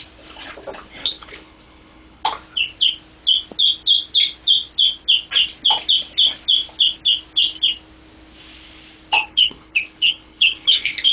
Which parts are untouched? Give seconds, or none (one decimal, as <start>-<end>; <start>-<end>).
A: 0.0-1.0; 2.2-9.2